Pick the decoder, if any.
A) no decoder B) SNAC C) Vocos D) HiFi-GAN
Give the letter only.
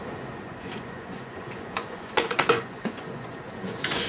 C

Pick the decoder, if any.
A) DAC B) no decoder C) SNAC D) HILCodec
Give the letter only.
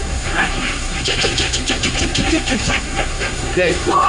C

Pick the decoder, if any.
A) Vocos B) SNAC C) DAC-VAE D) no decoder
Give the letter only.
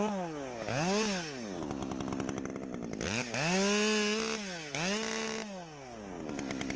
D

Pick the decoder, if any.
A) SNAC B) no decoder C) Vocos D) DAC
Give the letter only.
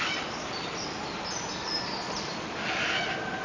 B